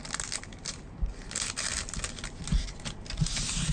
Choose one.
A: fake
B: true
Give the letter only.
B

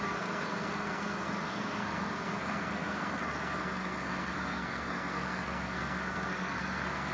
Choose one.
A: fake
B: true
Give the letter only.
A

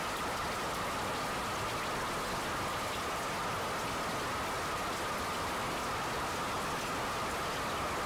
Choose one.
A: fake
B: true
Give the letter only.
B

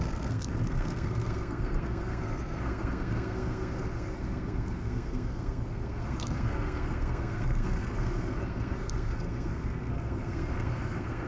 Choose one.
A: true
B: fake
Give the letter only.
B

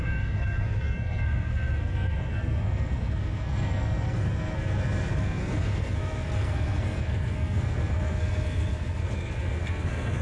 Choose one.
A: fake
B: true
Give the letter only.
A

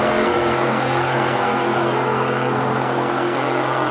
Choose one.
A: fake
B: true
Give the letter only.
A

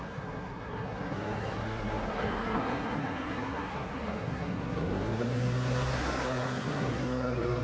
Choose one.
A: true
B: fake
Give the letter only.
B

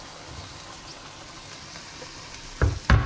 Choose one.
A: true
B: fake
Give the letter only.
A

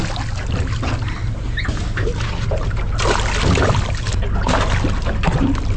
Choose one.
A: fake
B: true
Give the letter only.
B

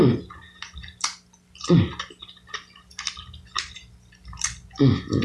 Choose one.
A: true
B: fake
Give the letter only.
A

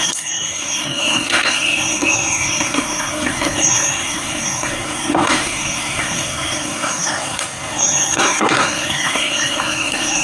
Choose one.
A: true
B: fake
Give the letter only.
B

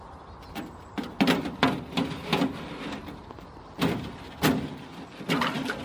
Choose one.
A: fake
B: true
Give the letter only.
B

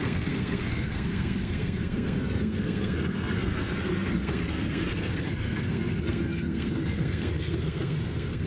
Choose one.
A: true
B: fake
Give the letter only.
B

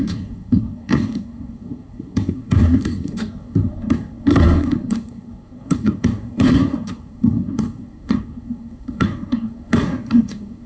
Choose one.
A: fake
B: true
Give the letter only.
A